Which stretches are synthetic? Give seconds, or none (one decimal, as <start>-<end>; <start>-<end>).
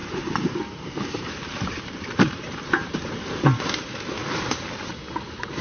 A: 0.0-3.4